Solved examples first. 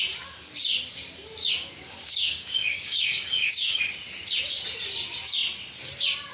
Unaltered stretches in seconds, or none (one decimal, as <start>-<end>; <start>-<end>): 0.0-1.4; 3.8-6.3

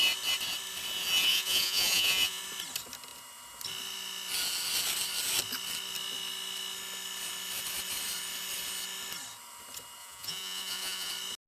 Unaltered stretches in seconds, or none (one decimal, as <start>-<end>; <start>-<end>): 0.0-1.3; 2.4-10.0; 11.1-11.5

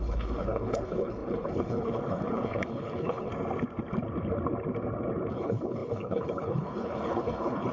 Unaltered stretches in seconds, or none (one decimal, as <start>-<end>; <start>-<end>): 3.3-5.3

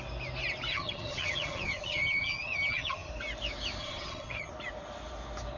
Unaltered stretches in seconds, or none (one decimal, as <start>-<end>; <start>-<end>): 0.0-0.7; 3.1-3.8; 4.5-5.6